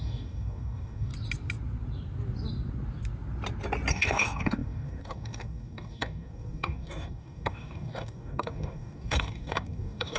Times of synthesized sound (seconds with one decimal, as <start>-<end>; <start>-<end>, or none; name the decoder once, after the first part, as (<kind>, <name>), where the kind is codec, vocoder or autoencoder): 0.0-1.1 (codec, DAC); 3.9-10.2